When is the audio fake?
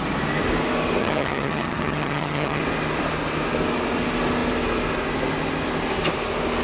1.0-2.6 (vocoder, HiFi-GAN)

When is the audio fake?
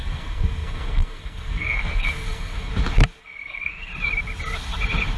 0.0-2.7 (codec, SNAC); 3.2-3.9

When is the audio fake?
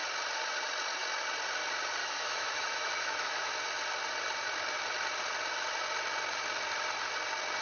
2.0-3.5 (autoencoder, DAC-VAE)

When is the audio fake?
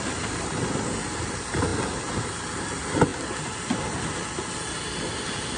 none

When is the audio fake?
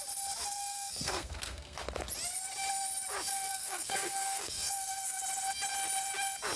0.6-1.8 (codec, SNAC); 3.3-5.2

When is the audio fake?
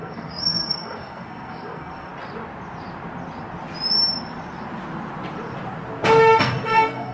0.0-2.1 (codec, SNAC); 6.4-7.1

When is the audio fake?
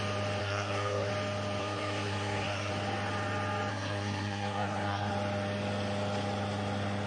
0.4-1.1 (codec, SNAC); 1.6-2.7; 3.7-5.1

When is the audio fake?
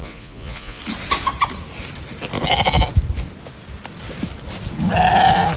0.0-0.8 (vocoder, Vocos)